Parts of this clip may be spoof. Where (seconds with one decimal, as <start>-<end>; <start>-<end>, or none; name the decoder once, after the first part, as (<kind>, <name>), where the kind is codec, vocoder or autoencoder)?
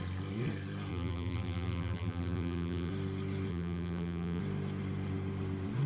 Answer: 0.9-2.9 (vocoder, BigVGAN v2); 3.5-4.4